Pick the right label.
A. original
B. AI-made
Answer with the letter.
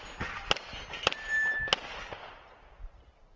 A